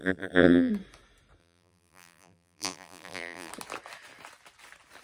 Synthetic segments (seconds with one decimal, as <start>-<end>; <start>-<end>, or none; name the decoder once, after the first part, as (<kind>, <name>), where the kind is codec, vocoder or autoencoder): 0.0-0.7 (vocoder, BigVGAN v2); 1.4-3.5